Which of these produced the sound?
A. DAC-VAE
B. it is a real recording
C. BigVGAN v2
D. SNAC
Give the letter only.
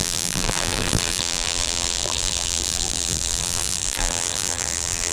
C